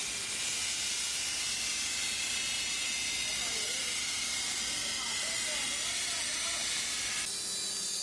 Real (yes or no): yes